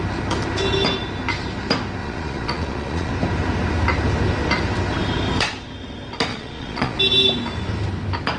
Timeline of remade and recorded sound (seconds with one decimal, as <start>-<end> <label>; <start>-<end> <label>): 0.0-2.0 recorded; 2.0-3.1 remade; 3.1-6.3 recorded; 6.3-7.0 remade; 7.0-8.4 recorded